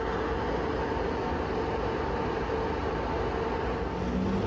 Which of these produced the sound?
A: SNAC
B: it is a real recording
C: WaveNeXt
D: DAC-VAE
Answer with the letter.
B